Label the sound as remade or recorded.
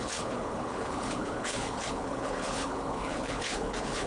remade